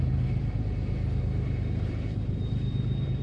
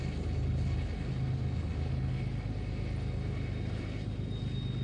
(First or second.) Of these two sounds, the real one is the second